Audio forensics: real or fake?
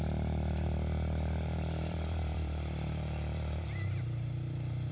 fake